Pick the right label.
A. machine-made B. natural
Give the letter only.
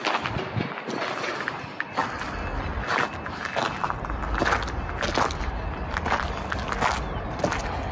B